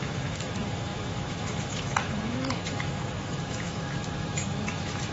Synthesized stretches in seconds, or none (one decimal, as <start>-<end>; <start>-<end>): 0.0-5.1